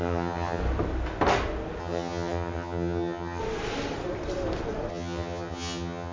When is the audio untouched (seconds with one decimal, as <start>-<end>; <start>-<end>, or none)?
0.6-1.8; 3.4-4.9